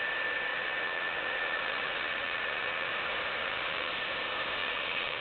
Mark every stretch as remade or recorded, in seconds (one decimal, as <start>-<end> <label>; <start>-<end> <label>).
0.0-0.5 recorded; 0.5-2.9 remade; 2.9-3.4 recorded; 3.4-3.9 remade; 3.9-4.6 recorded; 4.6-5.2 remade